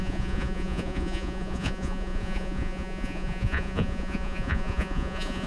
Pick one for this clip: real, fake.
fake